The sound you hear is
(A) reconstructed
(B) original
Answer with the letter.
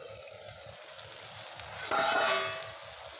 B